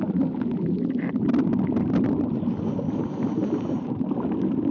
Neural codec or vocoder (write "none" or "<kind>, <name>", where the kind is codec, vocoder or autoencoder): none